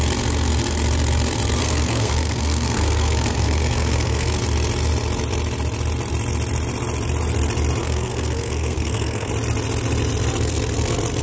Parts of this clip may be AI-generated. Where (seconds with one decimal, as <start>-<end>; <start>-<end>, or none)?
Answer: 1.6-4.4; 7.8-9.3